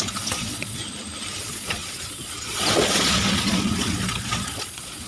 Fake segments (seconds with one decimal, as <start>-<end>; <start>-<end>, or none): 0.0-0.8; 1.4-5.1

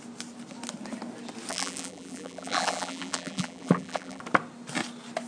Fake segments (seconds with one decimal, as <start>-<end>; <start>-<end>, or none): 1.5-4.2